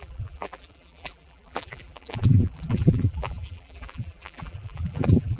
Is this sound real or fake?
fake